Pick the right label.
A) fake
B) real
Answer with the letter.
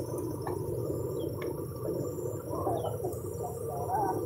B